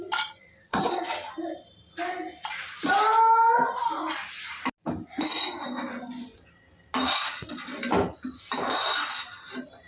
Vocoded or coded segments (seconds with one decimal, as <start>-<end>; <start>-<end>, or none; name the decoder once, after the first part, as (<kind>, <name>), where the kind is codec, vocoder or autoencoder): 0.7-1.3 (vocoder, HiFi-GAN)